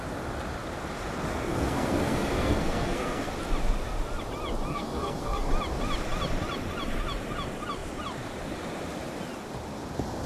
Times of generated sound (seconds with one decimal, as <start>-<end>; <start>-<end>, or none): 1.3-3.3; 4.7-5.5

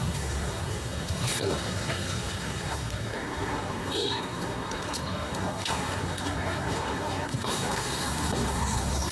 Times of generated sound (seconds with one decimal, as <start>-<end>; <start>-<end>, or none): 0.0-9.1

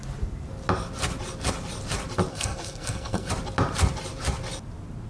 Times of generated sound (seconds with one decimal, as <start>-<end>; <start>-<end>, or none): 2.3-3.3